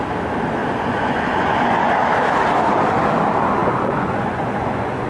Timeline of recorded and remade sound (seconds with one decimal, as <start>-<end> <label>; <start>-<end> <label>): 0.0-0.6 recorded; 0.6-2.0 remade; 2.0-3.6 recorded; 3.6-5.1 remade